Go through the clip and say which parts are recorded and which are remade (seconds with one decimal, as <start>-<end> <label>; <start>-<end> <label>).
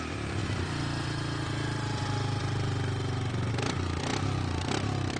0.0-5.2 recorded